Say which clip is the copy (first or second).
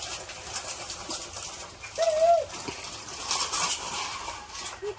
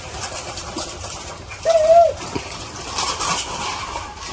second